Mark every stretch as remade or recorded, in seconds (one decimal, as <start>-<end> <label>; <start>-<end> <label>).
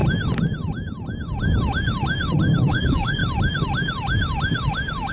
0.0-2.7 recorded; 2.7-3.2 remade; 3.2-5.1 recorded